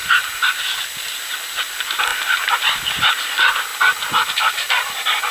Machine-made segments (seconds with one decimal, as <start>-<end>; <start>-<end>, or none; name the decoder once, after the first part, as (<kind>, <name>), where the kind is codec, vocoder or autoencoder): none